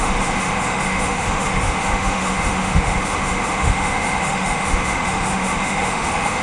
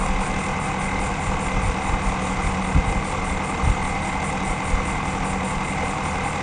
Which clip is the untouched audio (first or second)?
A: second